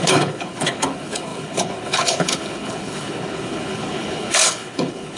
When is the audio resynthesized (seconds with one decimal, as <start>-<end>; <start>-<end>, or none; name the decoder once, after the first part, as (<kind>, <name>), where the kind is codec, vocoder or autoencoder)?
0.0-5.2 (codec, HILCodec)